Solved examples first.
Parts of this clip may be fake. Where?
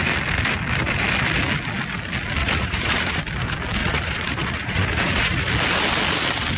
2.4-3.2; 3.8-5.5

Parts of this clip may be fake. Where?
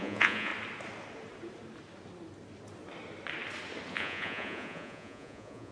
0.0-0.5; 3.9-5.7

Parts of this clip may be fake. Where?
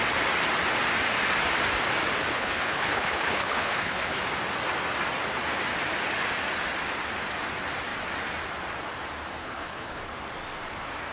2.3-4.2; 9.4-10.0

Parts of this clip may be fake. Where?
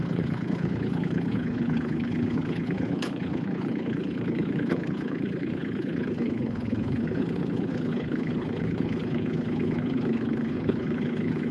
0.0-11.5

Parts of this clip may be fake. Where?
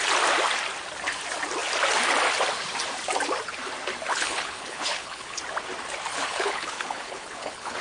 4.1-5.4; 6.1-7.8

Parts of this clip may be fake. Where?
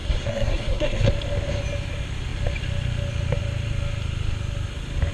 0.0-1.1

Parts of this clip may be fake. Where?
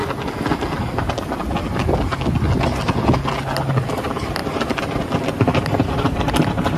4.4-6.8